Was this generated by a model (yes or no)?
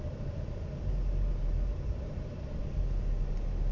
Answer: no